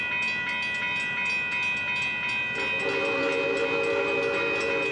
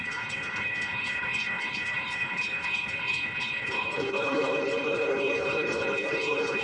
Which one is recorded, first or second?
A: first